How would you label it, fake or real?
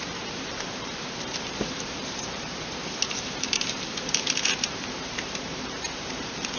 fake